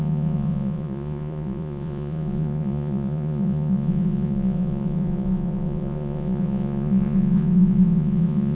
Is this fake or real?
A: fake